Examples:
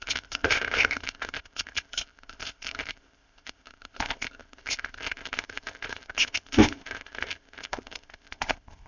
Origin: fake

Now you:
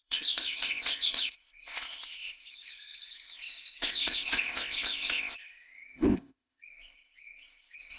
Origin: fake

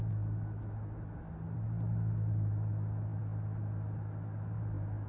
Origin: real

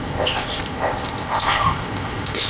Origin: fake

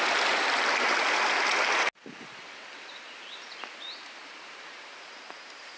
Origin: real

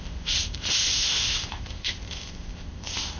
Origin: fake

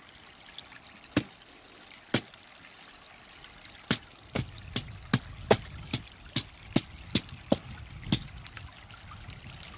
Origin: real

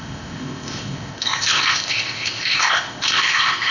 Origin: fake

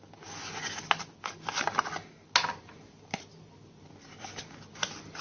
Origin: real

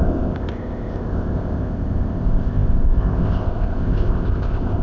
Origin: fake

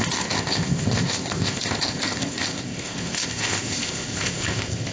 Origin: fake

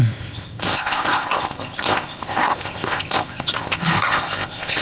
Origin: fake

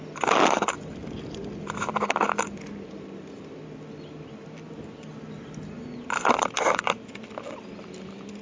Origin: real